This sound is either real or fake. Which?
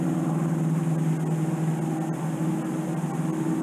real